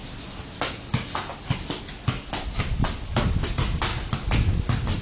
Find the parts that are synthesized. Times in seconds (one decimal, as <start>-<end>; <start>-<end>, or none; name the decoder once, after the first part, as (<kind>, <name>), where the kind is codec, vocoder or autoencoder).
none